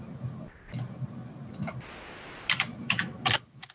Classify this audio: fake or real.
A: real